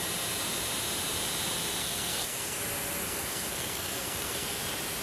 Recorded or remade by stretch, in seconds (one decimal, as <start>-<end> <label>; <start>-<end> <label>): 0.0-1.8 recorded; 1.8-2.6 remade; 2.6-3.0 recorded; 3.0-4.6 remade; 4.6-5.0 recorded